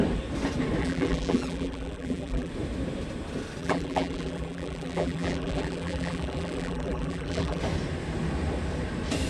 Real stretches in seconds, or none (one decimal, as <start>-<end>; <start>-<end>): 0.0-0.8; 2.5-3.6; 7.6-9.3